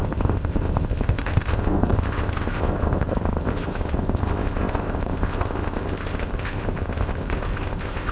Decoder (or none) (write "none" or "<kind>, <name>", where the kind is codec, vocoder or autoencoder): codec, ZipCodec